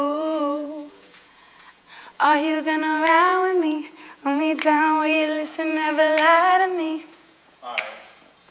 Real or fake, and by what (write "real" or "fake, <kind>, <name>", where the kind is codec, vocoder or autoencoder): fake, vocoder, Vocos